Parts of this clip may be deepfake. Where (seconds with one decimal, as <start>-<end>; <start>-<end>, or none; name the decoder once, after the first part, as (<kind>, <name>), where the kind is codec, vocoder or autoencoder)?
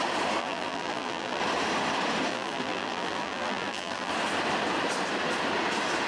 0.4-1.4 (vocoder, BigVGAN v2); 2.3-4.1